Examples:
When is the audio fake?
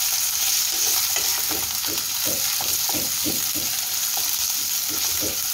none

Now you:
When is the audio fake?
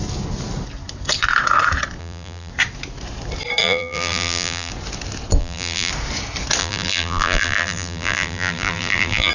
2.0-2.5; 3.6-4.7; 5.4-5.9; 6.6-9.3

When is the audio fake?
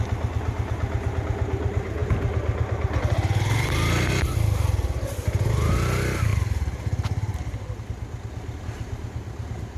none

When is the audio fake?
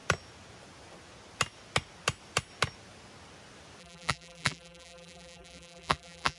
3.8-6.4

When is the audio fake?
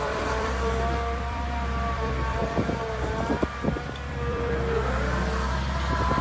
0.0-2.4; 3.7-6.2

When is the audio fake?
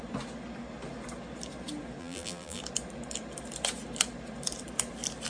2.0-2.6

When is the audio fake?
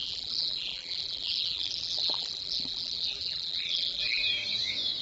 0.0-4.2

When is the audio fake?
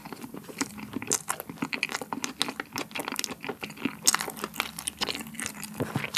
0.0-1.0